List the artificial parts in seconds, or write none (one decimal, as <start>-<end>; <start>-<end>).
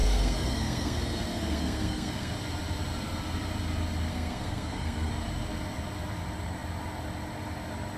0.0-2.3; 4.1-5.1